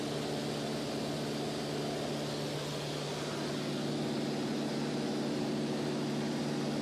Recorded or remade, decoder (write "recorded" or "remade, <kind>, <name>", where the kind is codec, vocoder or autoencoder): recorded